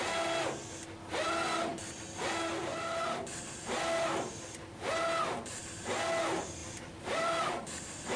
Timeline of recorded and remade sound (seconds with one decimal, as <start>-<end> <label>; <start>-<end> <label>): 0.0-6.6 recorded; 6.6-7.5 remade; 7.5-8.2 recorded